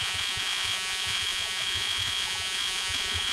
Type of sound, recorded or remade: remade